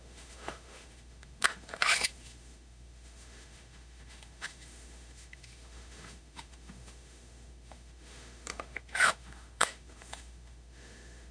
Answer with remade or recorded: remade